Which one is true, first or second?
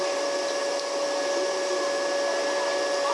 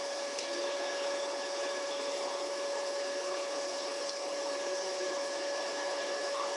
first